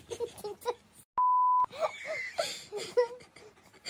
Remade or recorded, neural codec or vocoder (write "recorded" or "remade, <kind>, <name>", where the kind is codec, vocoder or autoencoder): recorded